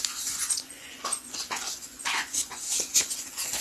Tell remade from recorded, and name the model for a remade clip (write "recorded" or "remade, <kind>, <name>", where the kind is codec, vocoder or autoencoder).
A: remade, vocoder, Vocos